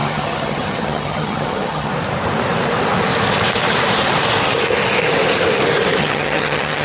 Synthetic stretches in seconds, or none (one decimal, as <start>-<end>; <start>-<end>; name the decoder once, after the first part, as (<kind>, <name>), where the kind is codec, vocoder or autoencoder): 0.0-1.9 (vocoder, HiFi-GAN); 6.0-6.8